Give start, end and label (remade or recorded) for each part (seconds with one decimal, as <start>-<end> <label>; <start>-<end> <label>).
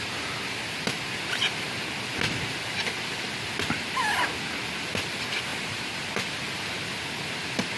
0.0-7.8 recorded